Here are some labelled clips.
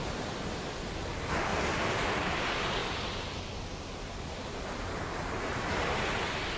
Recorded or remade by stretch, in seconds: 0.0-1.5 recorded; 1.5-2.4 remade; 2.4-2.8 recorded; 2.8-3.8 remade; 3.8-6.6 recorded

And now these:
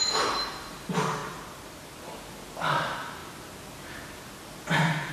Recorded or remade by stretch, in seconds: 0.0-3.2 remade; 3.2-4.4 recorded; 4.4-5.1 remade

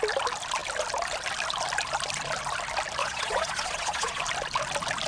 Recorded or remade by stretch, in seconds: 0.0-3.0 recorded; 3.0-4.2 remade; 4.2-5.1 recorded